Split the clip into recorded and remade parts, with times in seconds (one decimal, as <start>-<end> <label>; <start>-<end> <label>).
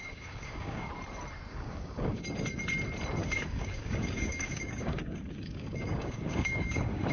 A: 0.0-0.9 remade; 0.9-1.5 recorded; 1.5-2.2 remade; 2.2-3.2 recorded; 3.2-7.1 remade